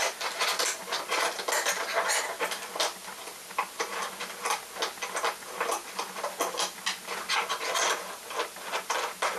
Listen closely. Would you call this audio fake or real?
real